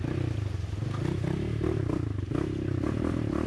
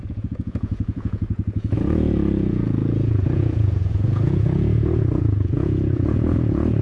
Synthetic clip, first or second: second